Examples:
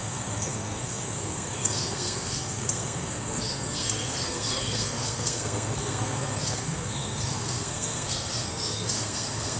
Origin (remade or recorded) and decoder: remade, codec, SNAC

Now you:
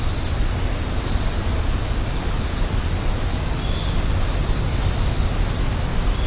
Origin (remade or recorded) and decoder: recorded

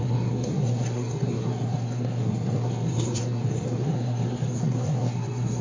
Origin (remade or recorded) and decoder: remade, codec, SNAC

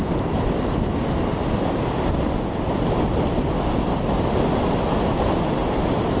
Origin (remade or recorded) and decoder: recorded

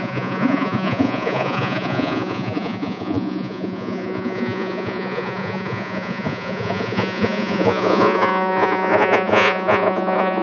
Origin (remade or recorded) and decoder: remade, vocoder, Vocos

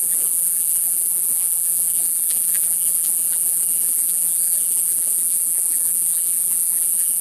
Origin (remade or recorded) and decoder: remade, vocoder, BigVGAN v2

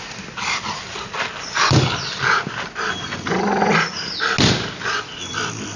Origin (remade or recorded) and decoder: recorded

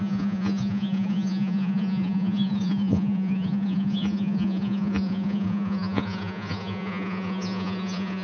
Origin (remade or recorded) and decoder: remade, vocoder, Vocos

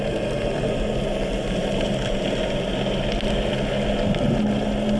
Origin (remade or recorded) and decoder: recorded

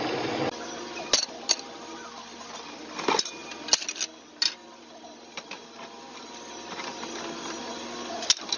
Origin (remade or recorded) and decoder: recorded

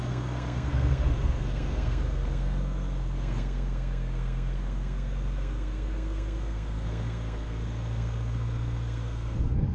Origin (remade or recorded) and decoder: remade, codec, SNAC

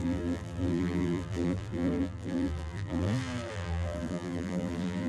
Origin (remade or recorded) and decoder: remade, vocoder, BigVGAN v2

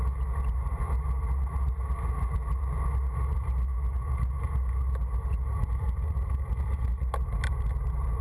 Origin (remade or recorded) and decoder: recorded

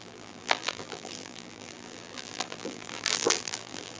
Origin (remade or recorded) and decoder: remade, vocoder, BigVGAN v2